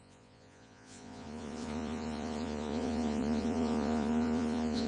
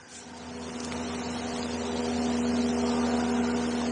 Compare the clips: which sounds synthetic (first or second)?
first